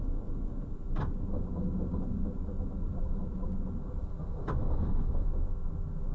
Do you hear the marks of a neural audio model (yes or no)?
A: no